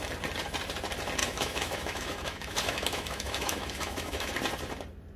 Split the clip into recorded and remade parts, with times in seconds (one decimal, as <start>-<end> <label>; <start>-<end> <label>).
0.0-1.2 recorded; 1.2-4.3 remade; 4.3-5.2 recorded